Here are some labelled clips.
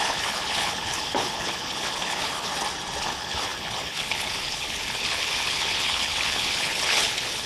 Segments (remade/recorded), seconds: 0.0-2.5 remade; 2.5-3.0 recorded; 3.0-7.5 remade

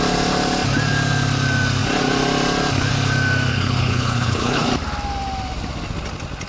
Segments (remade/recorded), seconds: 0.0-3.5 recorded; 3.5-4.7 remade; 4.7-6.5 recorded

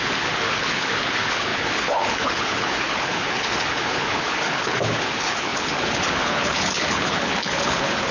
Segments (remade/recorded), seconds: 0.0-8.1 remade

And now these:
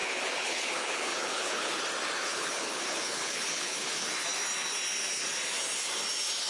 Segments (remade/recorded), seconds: 0.0-1.8 remade; 1.8-2.3 recorded; 2.3-4.1 remade; 4.1-6.5 recorded

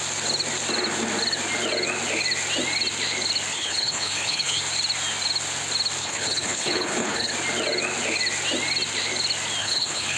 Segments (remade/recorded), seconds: 0.0-3.5 recorded; 3.5-4.6 remade; 4.6-6.0 recorded; 6.0-7.3 remade; 7.3-9.6 recorded; 9.6-10.2 remade